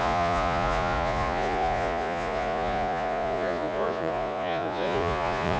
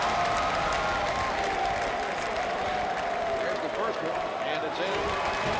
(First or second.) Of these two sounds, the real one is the second